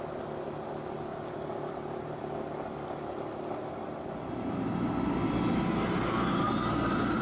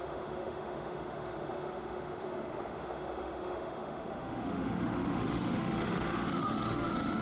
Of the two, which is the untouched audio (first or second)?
first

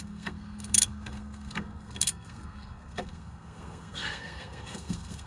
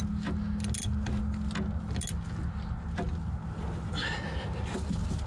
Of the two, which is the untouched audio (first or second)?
second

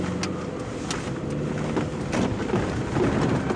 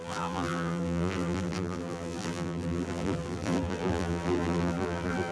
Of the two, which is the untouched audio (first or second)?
first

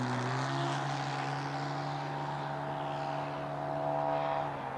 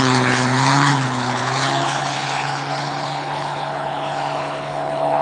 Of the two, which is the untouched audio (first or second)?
first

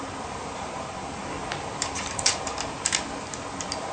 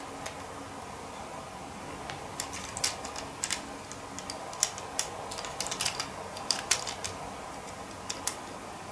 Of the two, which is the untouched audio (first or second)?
second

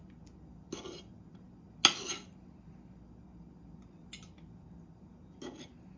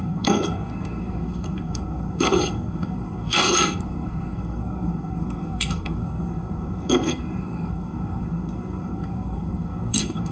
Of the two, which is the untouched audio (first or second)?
first